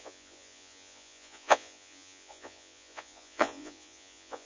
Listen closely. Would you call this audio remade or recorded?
remade